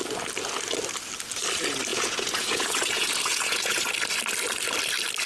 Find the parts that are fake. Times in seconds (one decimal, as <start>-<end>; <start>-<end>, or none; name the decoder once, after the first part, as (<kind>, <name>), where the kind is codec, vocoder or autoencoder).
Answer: 1.9-3.9 (vocoder, Vocos)